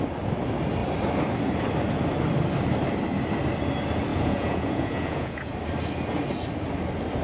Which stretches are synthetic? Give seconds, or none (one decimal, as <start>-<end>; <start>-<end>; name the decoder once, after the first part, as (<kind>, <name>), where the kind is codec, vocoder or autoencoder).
4.1-5.5 (vocoder, Vocos)

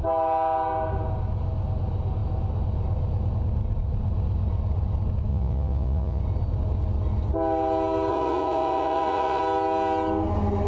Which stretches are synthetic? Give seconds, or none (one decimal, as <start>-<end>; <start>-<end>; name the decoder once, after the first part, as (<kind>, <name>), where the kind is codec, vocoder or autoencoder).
5.3-6.2 (vocoder, Vocos); 8.1-9.4

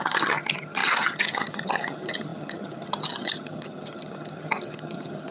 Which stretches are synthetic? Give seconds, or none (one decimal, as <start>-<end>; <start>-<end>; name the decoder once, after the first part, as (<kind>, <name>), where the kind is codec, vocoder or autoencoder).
0.0-5.3 (vocoder, HiFi-GAN)